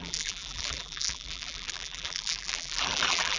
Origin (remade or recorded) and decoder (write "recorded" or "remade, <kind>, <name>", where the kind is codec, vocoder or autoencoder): remade, vocoder, BigVGAN v2